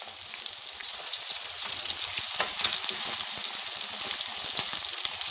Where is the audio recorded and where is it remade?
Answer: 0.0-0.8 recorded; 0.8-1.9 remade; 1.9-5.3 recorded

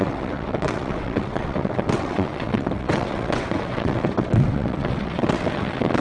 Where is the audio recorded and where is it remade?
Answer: 0.0-6.0 remade

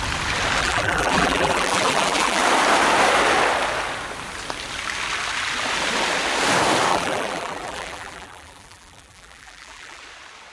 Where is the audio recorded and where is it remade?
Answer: 0.0-0.6 recorded; 0.6-2.4 remade; 2.4-6.9 recorded; 6.9-10.0 remade; 10.0-10.5 recorded

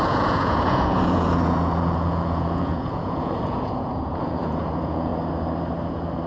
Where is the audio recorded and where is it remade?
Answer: 0.0-5.1 remade; 5.1-6.3 recorded

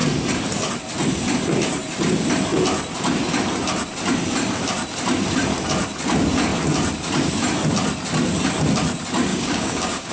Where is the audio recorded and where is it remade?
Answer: 0.0-9.3 recorded; 9.3-10.1 remade

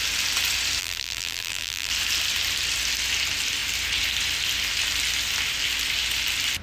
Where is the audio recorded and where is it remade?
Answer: 0.0-0.8 recorded; 0.8-1.9 remade; 1.9-6.6 recorded

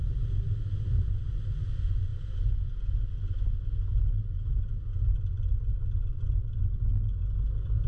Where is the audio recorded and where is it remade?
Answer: 0.0-7.9 recorded